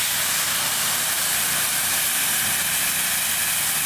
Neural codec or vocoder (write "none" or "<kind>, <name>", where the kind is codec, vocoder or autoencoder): none